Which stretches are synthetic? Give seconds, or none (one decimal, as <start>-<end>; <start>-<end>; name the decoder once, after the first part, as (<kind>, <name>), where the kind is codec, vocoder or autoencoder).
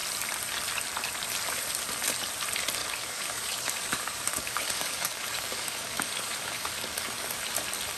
2.8-7.4 (codec, DAC)